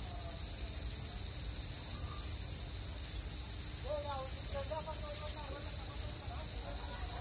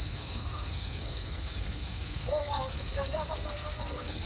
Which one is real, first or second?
first